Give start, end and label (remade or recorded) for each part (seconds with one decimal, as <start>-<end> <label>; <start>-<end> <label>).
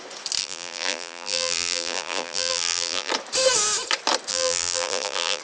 0.0-0.4 recorded; 0.4-3.1 remade; 3.1-4.3 recorded; 4.3-5.4 remade